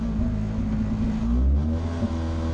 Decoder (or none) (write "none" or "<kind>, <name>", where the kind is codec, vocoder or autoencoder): none